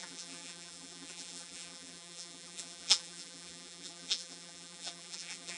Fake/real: fake